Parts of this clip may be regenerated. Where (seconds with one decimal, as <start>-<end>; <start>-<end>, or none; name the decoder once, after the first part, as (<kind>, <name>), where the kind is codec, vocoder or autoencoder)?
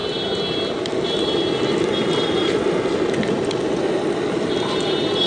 none